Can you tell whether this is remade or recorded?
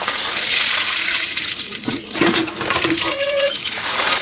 remade